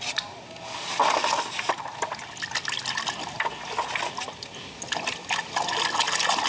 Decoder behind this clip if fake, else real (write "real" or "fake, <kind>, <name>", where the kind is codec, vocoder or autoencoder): real